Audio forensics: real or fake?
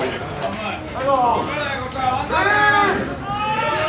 real